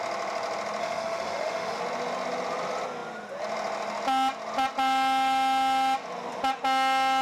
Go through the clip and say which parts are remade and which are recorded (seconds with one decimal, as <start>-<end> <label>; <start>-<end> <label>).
0.0-0.8 recorded; 0.8-1.8 remade; 1.8-7.2 recorded